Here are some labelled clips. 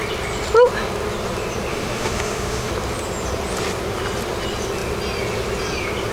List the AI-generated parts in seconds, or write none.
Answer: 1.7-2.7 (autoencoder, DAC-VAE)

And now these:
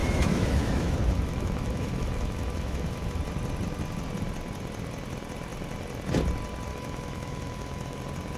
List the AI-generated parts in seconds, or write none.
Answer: 0.0-3.2 (autoencoder, DAC-VAE); 6.7-8.0